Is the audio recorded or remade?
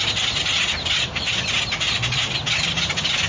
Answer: recorded